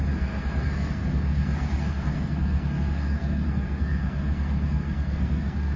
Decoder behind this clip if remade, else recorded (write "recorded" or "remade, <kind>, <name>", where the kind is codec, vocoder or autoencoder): remade, codec, SNAC